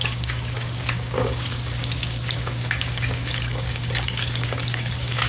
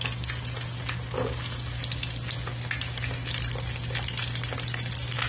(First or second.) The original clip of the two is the second